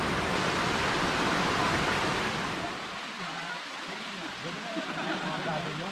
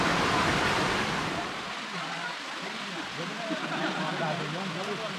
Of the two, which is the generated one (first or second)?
first